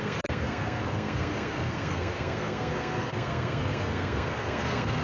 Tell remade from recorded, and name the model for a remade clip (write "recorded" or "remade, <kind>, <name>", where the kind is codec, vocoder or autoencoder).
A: remade, codec, SNAC